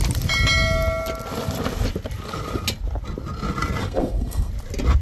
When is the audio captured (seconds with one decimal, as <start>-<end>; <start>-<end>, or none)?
0.0-3.8; 4.5-5.0